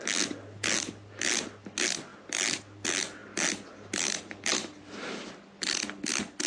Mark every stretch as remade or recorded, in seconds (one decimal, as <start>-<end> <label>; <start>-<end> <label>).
0.0-6.5 recorded